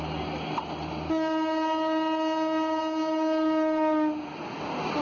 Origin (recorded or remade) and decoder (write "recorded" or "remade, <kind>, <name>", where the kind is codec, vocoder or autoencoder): recorded